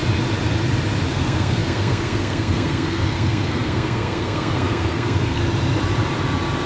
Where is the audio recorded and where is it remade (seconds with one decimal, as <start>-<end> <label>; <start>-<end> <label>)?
0.0-1.1 recorded; 1.1-5.4 remade; 5.4-6.7 recorded